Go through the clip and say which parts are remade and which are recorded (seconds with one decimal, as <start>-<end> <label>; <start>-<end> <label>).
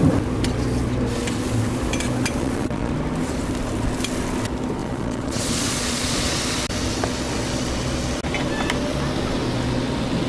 0.0-2.4 recorded; 2.4-2.9 remade; 2.9-4.8 recorded; 4.8-6.4 remade; 6.4-10.3 recorded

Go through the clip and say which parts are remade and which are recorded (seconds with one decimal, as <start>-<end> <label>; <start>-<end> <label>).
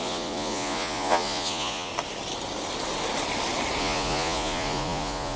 0.0-1.9 remade; 1.9-3.8 recorded; 3.8-5.4 remade